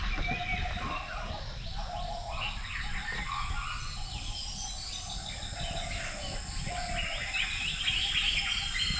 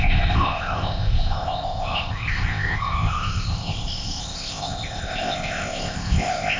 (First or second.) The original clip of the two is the first